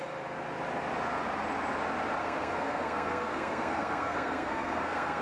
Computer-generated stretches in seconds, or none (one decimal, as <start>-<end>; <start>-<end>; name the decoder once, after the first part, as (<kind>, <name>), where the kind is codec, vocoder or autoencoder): 2.2-5.2 (codec, SNAC)